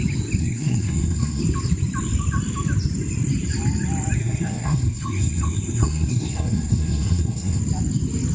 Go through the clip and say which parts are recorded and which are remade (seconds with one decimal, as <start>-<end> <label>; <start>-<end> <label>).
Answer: 0.0-0.4 recorded; 0.4-1.4 remade; 1.4-4.2 recorded; 4.2-7.6 remade; 7.6-8.3 recorded